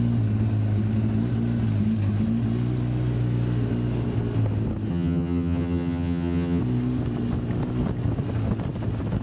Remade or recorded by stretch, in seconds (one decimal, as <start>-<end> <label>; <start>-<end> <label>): 0.0-4.9 recorded; 4.9-6.6 remade; 6.6-9.2 recorded